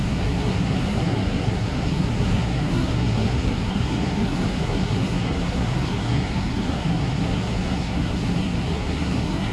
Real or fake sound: fake